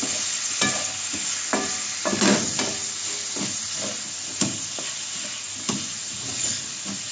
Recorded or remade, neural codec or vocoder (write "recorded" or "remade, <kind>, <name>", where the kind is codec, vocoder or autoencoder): recorded